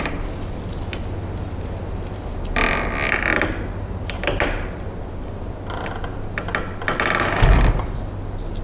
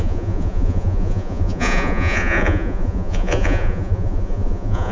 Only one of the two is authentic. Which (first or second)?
first